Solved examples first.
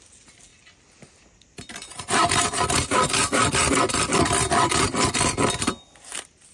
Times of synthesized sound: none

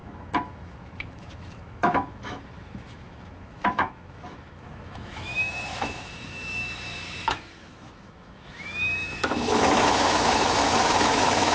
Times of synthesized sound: 0.0-11.5 (autoencoder, DAC-VAE)

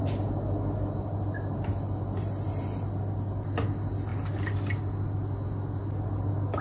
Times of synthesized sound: none

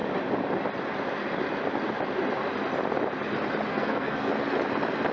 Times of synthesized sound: 3.7-4.3 (codec, SNAC)

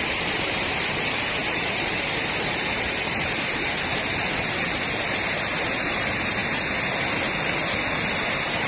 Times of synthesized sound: 0.0-6.4 (vocoder, BigVGAN v2); 8.1-8.7

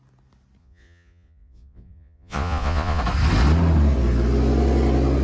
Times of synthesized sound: 0.6-3.0 (vocoder, Vocos)

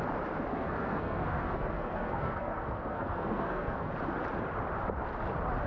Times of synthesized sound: 0.5-3.9 (codec, SNAC)